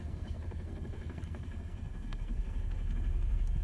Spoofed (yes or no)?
yes